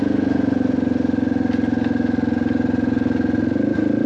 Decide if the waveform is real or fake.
real